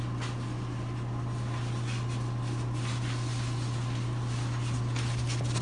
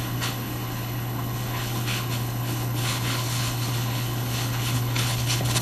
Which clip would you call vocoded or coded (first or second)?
second